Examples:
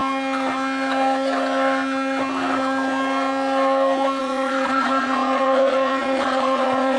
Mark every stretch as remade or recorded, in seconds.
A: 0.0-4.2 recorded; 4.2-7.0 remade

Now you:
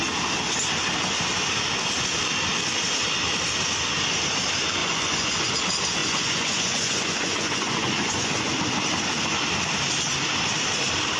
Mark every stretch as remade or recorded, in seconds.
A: 0.0-4.8 recorded; 4.8-5.5 remade; 5.5-6.0 recorded; 6.0-8.5 remade; 8.5-11.2 recorded

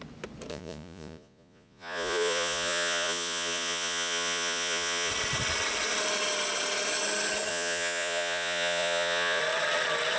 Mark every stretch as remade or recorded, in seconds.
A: 0.0-0.5 recorded; 0.5-5.1 remade; 5.1-7.5 recorded; 7.5-9.4 remade; 9.4-10.2 recorded

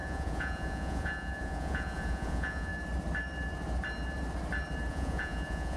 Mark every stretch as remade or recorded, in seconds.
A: 0.0-2.7 remade; 2.7-4.9 recorded; 4.9-5.8 remade

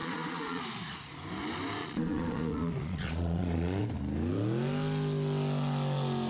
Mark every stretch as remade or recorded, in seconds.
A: 0.0-0.6 remade; 0.6-1.8 recorded; 1.8-3.8 remade; 3.8-6.3 recorded

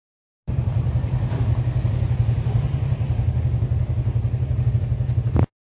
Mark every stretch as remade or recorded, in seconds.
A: 0.0-5.7 recorded